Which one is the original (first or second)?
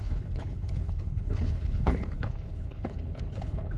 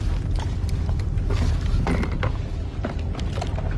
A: second